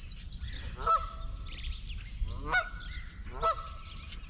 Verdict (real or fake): real